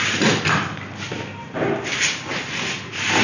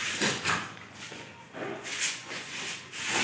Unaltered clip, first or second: first